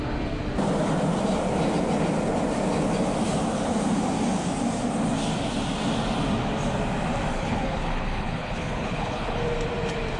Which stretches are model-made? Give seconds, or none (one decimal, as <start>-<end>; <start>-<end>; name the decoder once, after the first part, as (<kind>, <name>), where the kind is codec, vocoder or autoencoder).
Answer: 7.3-9.4 (codec, HILCodec)